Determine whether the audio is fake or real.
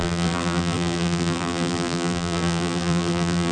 fake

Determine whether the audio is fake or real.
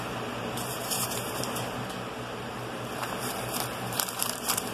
fake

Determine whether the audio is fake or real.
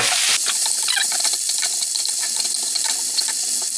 real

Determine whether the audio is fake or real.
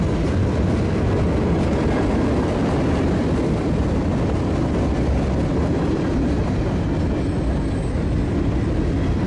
real